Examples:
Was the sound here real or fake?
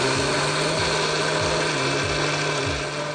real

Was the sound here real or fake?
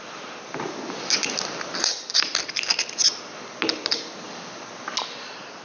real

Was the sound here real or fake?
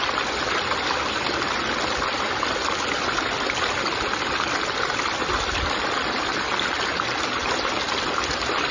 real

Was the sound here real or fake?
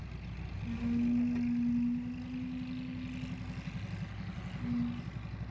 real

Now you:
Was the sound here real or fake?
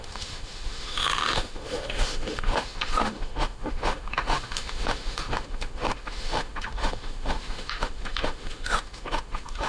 fake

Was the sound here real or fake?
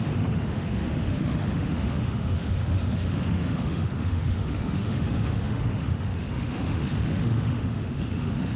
fake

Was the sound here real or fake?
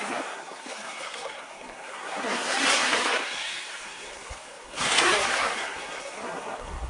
fake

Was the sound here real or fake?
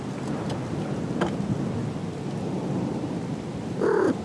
real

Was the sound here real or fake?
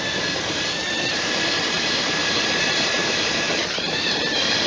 fake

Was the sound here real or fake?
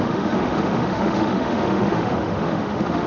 fake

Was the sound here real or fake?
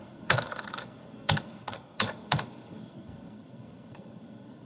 fake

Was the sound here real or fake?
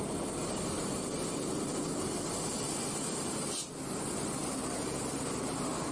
real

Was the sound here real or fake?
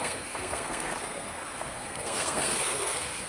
fake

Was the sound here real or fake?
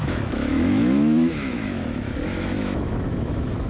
fake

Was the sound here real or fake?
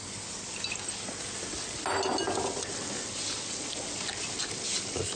real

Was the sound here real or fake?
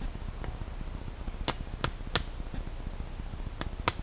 real